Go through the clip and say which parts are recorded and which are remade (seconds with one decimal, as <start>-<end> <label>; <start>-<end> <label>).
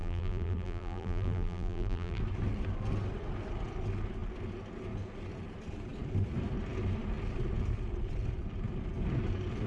0.0-2.2 remade; 2.2-9.7 recorded